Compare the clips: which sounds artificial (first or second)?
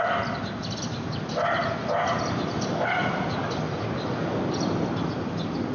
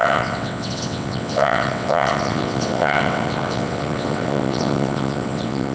second